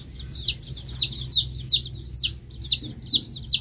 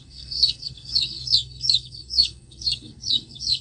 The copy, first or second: second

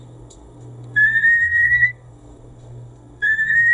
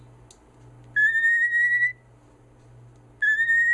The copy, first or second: first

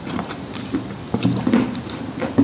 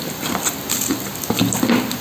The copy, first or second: first